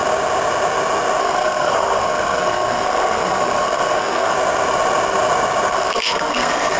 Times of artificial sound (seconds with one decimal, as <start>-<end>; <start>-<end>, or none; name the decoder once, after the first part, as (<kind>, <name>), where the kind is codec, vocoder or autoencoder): 1.2-4.3 (codec, SNAC); 5.7-6.8